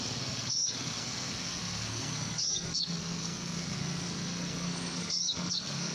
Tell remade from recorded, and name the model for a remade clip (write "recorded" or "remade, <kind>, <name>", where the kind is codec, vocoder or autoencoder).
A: remade, codec, SNAC